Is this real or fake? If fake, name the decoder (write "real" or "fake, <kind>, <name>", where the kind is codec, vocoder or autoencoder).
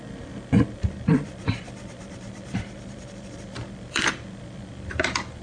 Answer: fake, vocoder, BigVGAN v2